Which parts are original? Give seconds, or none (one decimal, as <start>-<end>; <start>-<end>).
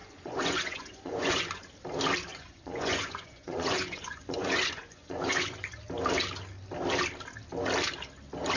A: 1.7-2.3; 5.7-8.6